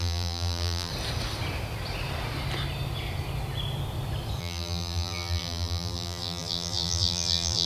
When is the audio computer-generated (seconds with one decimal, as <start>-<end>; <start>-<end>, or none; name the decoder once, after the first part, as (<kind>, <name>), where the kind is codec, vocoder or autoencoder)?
0.0-0.9 (vocoder, BigVGAN v2); 4.4-7.7